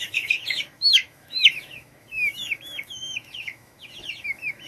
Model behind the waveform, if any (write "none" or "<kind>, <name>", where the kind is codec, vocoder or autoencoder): autoencoder, DAC-VAE